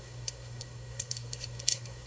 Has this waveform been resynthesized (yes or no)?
yes